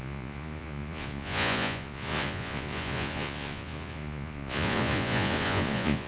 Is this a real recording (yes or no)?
no